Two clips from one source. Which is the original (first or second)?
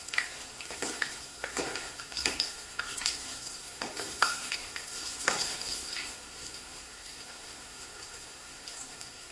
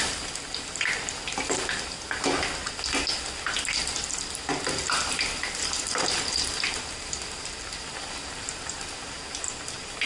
second